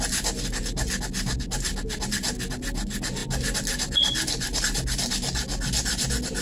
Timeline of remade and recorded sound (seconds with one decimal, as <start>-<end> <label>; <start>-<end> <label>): 0.0-6.4 recorded